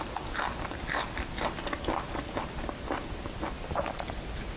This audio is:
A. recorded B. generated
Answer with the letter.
A